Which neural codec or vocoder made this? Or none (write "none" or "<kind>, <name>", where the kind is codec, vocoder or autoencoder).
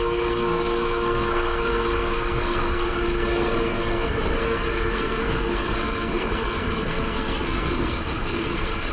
codec, SNAC